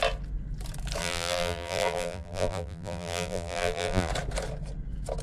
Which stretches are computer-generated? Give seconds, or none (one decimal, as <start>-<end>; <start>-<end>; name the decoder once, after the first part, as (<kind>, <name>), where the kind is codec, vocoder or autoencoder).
1.0-4.1 (vocoder, BigVGAN v2)

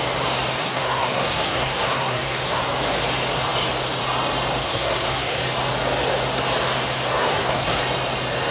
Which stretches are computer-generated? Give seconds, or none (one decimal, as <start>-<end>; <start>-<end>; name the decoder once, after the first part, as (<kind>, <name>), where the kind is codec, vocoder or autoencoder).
0.6-2.6 (codec, SNAC); 4.6-5.4; 7.2-7.8